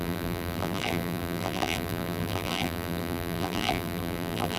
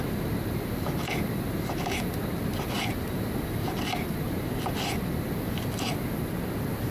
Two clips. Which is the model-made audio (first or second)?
first